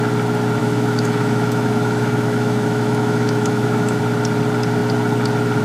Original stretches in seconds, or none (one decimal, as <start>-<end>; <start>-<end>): 0.0-0.6; 4.0-5.6